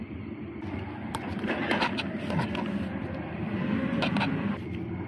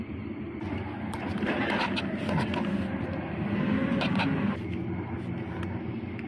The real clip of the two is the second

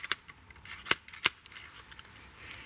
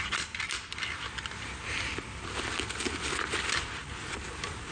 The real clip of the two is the second